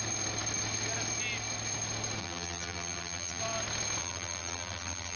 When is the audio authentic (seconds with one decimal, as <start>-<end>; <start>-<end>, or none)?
0.0-2.2; 3.4-4.0